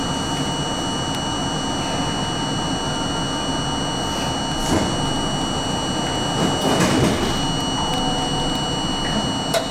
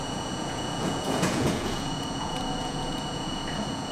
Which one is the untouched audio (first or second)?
first